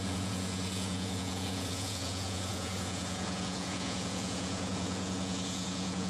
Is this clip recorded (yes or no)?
no